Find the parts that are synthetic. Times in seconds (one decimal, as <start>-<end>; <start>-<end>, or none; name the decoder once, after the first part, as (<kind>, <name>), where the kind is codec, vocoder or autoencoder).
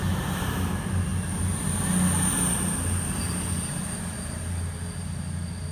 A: none